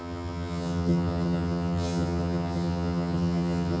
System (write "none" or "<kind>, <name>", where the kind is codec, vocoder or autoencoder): vocoder, HiFi-GAN